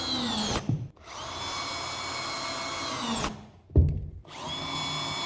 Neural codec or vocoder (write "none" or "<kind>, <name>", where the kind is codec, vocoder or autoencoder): none